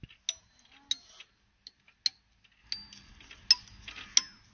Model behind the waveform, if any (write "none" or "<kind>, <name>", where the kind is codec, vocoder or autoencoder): none